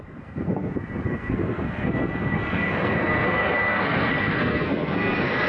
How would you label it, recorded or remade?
remade